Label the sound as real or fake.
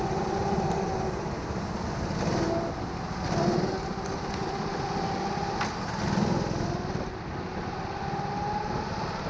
real